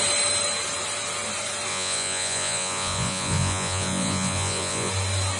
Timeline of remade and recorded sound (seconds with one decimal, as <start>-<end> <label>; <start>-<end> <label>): 0.0-1.7 recorded; 1.7-4.9 remade; 4.9-5.4 recorded